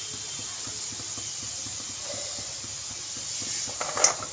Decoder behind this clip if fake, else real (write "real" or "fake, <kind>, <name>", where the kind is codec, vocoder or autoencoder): real